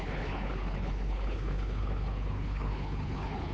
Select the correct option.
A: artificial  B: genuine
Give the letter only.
A